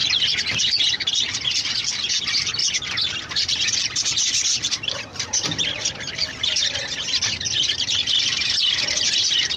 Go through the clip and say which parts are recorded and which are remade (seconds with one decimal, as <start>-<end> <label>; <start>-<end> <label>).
0.0-2.6 recorded; 2.6-6.8 remade; 6.8-9.6 recorded